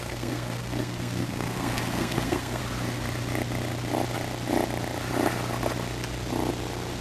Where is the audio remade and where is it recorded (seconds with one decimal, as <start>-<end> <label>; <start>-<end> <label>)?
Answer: 0.0-2.6 remade; 2.6-7.0 recorded